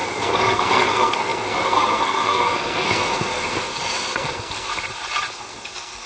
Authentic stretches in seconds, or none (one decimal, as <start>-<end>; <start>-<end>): 4.7-5.3

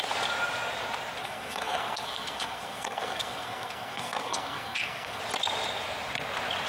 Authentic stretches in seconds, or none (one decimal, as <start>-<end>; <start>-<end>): 0.0-1.2; 5.2-6.7

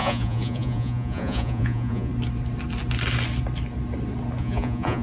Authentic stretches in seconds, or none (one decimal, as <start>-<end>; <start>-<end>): 2.1-4.4

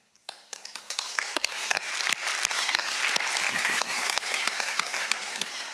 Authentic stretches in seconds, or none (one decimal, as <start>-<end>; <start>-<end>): 1.9-2.5; 3.0-3.5

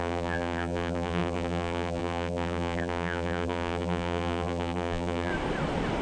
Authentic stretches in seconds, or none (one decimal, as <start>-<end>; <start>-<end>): 5.3-6.0

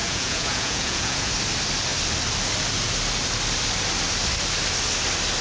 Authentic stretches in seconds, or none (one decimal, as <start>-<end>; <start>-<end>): 1.3-5.4

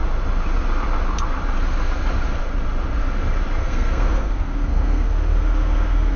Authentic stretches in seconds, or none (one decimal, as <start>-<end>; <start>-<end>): 0.0-3.6